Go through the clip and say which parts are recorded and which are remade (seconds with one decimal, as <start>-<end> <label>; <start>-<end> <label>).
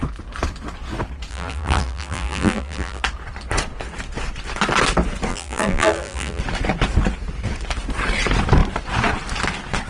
0.0-1.3 recorded; 1.3-3.0 remade; 3.0-5.3 recorded; 5.3-6.4 remade; 6.4-9.9 recorded